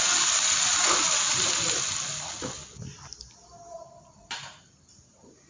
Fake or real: real